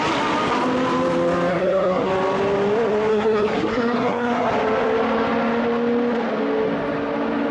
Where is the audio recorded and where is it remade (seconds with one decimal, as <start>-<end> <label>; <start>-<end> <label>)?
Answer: 0.0-1.5 recorded; 1.5-2.1 remade; 2.1-3.1 recorded; 3.1-4.5 remade; 4.5-7.5 recorded